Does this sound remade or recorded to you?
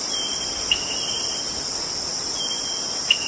recorded